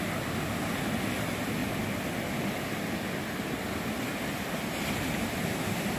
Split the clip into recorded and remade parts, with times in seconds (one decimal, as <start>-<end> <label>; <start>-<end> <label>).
0.0-6.0 recorded